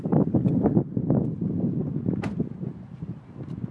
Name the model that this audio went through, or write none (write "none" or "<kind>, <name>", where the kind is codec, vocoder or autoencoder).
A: none